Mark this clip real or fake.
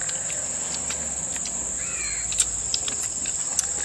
real